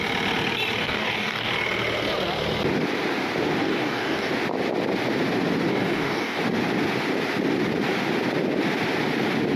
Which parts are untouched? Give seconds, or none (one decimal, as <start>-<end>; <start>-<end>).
0.0-0.8; 1.5-3.6; 4.3-5.7; 6.4-9.6